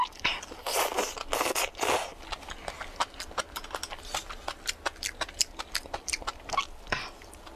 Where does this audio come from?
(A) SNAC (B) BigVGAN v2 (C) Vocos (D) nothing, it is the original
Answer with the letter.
D